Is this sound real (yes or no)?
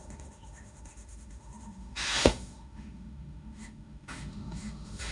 no